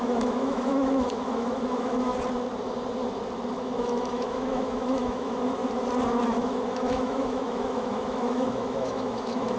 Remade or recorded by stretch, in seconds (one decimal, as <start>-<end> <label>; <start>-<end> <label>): 0.0-2.1 remade; 2.1-3.5 recorded; 3.5-5.6 remade; 5.6-6.3 recorded; 6.3-9.6 remade